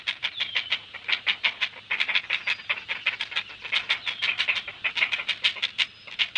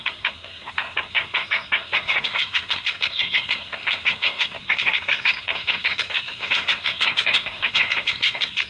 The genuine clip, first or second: first